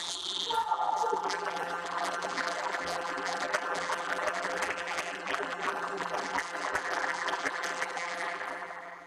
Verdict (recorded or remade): remade